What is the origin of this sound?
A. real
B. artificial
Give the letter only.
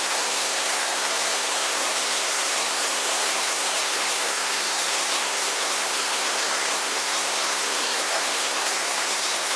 B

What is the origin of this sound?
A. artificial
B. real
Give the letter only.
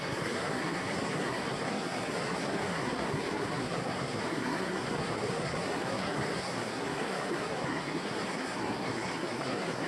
A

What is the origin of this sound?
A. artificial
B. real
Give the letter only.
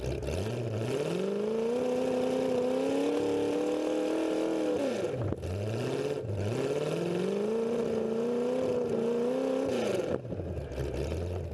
B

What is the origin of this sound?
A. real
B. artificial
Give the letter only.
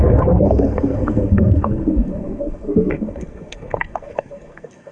B